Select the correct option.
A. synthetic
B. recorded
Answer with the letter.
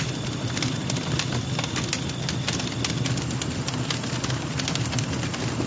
B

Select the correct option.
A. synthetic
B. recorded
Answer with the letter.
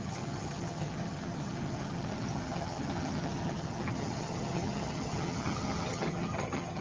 A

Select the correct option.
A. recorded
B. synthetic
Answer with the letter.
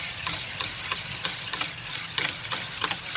A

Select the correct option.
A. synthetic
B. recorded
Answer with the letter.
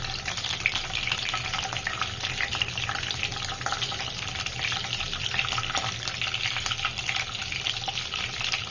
B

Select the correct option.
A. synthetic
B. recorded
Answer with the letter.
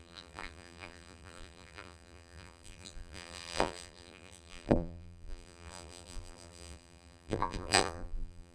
A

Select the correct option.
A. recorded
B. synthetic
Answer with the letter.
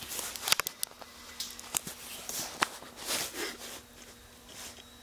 A